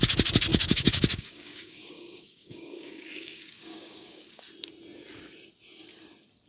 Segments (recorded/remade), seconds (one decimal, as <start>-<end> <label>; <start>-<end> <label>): 0.0-0.5 recorded; 0.5-4.4 remade; 4.4-6.5 recorded